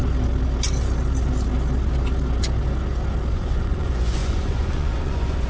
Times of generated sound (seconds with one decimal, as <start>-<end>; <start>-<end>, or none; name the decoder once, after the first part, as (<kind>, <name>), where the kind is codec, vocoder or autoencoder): 3.3-5.5 (vocoder, Vocos)